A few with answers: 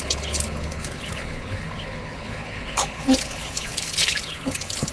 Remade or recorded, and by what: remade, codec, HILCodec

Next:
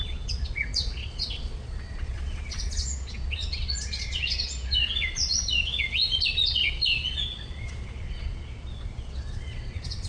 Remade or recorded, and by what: remade, vocoder, Vocos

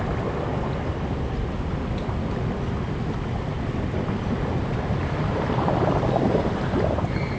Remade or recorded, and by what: recorded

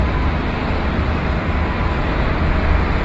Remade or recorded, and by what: remade, vocoder, BigVGAN v2